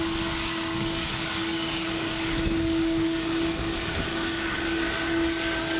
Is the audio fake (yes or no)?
yes